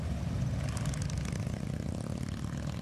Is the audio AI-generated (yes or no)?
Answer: no